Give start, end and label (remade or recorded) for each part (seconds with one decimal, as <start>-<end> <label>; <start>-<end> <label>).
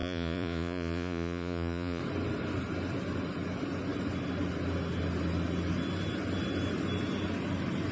0.0-2.0 remade; 2.0-7.9 recorded